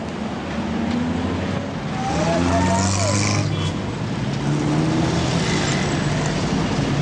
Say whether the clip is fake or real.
real